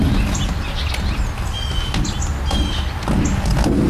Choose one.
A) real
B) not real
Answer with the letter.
A